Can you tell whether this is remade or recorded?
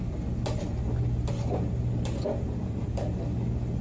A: recorded